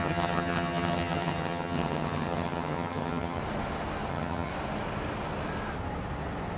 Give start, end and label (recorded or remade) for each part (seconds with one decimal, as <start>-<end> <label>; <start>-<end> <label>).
0.0-3.4 remade; 3.4-4.1 recorded; 4.1-4.5 remade; 4.5-6.6 recorded